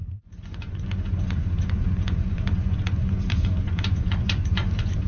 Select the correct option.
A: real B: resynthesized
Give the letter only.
B